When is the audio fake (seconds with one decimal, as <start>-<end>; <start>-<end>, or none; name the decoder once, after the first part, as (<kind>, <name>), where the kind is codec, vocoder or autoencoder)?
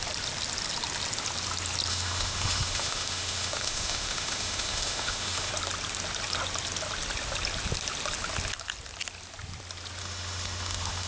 1.9-5.5 (autoencoder, DAC-VAE); 10.0-11.1